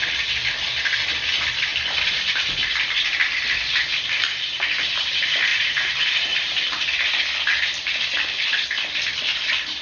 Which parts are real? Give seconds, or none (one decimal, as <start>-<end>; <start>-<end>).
0.0-5.5; 6.6-9.8